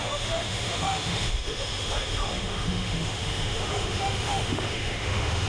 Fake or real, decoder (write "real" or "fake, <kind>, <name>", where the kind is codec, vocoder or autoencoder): fake, autoencoder, DAC-VAE